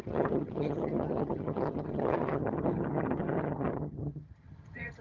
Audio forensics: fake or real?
fake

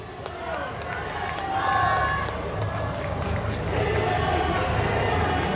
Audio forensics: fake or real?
real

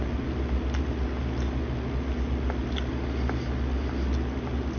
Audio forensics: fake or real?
real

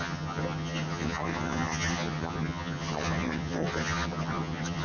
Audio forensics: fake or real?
fake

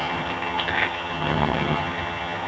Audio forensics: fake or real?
fake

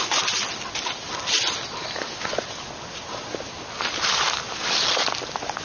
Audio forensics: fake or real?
real